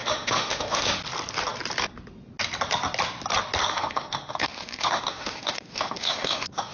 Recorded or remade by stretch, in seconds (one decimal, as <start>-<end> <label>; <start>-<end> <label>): 0.0-1.0 remade; 1.0-3.7 recorded; 3.7-6.7 remade